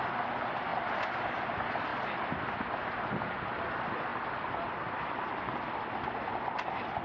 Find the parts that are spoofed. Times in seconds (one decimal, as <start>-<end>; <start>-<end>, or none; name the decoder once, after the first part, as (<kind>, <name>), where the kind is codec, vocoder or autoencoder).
none